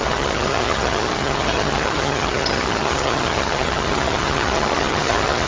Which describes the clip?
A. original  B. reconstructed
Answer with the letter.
B